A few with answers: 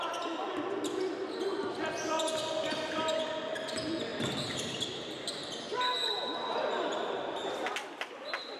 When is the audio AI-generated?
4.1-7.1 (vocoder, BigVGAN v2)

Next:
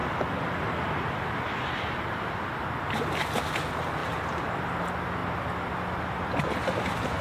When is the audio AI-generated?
none

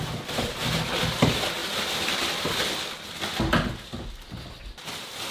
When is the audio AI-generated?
none

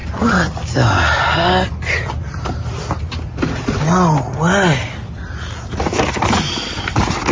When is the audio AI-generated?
none

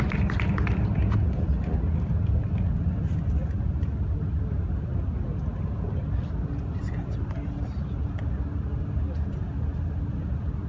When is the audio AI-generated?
none

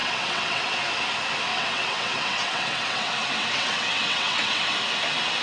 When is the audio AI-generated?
0.0-0.8 (vocoder, WaveNeXt); 1.5-4.6

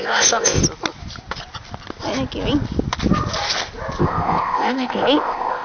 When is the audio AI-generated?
0.0-0.6 (codec, ZipCodec); 4.0-5.6

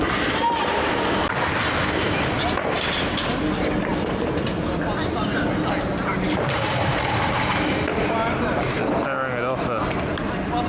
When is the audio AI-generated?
none